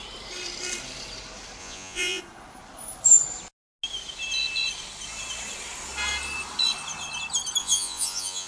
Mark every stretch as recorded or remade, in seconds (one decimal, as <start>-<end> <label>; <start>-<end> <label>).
0.0-1.6 recorded; 1.6-2.2 remade; 2.2-7.6 recorded; 7.6-8.5 remade